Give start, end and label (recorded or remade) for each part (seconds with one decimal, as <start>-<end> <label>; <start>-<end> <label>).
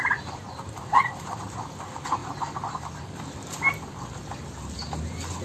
0.0-5.4 recorded